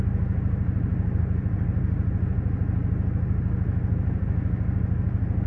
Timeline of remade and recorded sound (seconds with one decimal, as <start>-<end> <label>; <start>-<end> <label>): 0.0-5.5 recorded